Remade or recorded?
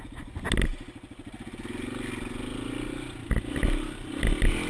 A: recorded